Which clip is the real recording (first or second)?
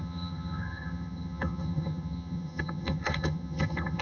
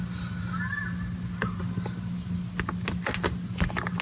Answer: second